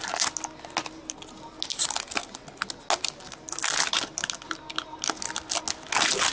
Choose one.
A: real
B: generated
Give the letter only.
A